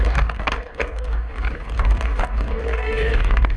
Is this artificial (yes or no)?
yes